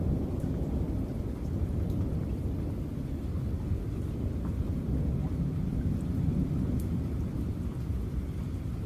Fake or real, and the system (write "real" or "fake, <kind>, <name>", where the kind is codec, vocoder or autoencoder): real